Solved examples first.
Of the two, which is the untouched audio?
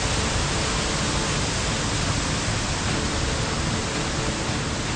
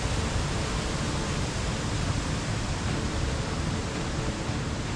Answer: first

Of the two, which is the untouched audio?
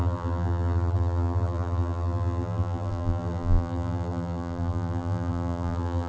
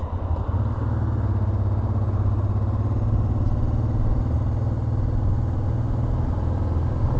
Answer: second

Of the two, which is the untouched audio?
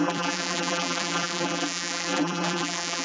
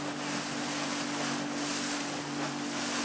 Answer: second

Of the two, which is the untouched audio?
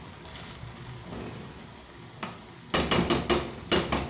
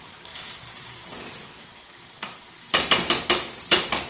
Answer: first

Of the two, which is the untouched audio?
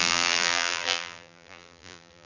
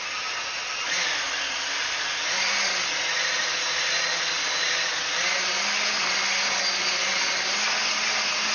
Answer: second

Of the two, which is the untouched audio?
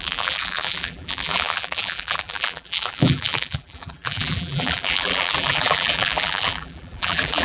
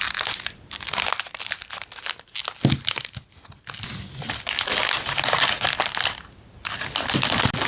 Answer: second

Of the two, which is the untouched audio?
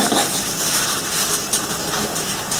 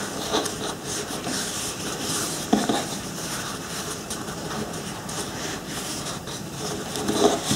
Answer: first